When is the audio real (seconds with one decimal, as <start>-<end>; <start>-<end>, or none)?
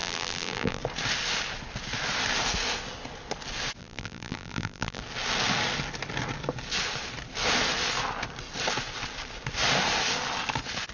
0.8-3.8; 5.0-10.9